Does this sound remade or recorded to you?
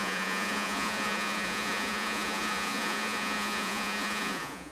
remade